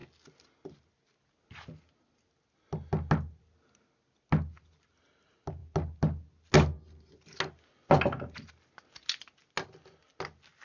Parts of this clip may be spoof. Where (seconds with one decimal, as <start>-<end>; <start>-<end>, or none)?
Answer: none